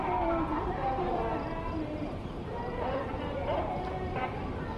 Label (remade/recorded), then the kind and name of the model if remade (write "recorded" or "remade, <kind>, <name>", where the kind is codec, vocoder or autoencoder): recorded